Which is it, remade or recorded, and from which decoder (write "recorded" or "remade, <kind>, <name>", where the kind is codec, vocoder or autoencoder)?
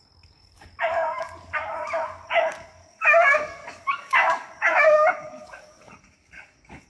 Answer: remade, codec, DAC